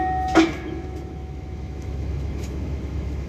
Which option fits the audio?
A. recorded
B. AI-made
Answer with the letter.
B